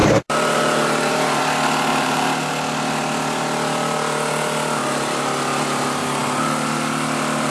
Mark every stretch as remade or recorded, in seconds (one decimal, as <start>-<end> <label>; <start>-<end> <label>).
0.0-1.4 remade; 1.4-1.9 recorded; 1.9-2.5 remade; 2.5-7.5 recorded